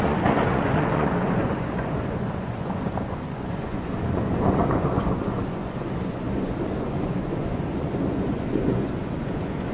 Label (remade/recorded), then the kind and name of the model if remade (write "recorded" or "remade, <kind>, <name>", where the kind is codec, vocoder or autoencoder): remade, vocoder, Vocos